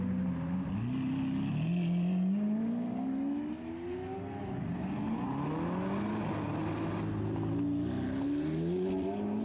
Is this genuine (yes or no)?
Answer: yes